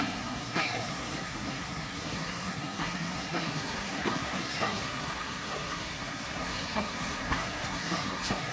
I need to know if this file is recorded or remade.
remade